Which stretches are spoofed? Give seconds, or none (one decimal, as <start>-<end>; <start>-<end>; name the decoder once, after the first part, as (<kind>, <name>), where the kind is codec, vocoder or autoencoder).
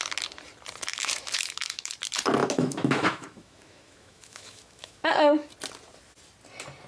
0.9-1.9 (autoencoder, DAC-VAE); 2.4-5.5